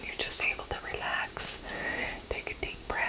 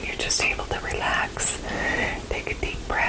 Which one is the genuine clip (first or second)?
second